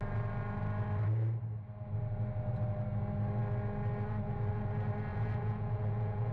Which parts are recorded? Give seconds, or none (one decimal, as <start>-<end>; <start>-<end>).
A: 0.0-5.1